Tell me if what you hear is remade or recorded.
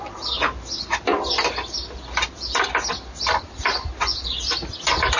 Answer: recorded